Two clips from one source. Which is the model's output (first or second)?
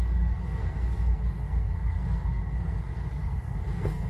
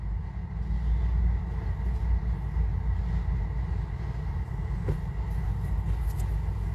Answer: first